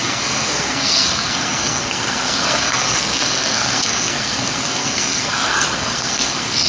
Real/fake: fake